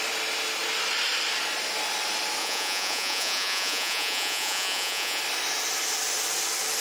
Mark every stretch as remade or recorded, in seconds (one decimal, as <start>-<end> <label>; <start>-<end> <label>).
0.0-2.4 recorded; 2.4-5.2 remade; 5.2-6.8 recorded